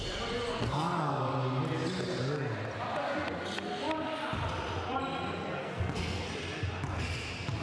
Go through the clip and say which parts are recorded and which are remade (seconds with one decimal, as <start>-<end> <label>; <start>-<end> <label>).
0.0-0.5 recorded; 0.5-1.2 remade; 1.2-5.6 recorded; 5.6-6.3 remade; 6.3-7.6 recorded